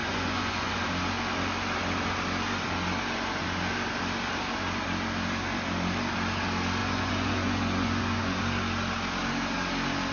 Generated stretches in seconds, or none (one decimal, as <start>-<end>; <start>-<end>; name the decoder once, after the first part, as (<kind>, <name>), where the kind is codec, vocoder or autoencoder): 0.0-0.8 (vocoder, Vocos); 6.8-8.4

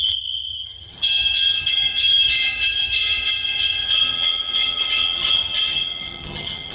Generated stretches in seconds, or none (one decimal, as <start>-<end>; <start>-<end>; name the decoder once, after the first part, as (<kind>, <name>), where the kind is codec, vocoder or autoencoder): 0.0-6.7 (vocoder, HiFi-GAN)

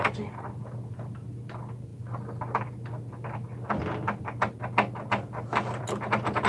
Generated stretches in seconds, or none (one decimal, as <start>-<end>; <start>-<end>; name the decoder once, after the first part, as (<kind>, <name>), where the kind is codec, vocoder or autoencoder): none

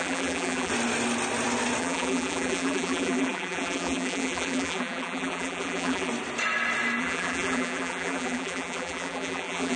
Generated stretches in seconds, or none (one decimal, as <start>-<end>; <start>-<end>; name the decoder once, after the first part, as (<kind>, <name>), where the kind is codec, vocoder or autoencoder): 0.0-0.7 (vocoder, BigVGAN v2); 1.8-6.1; 7.0-9.8

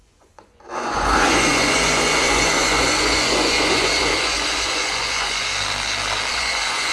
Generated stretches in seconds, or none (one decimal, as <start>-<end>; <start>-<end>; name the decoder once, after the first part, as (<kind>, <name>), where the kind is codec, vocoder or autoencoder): 0.0-5.5 (vocoder, Vocos); 6.3-6.9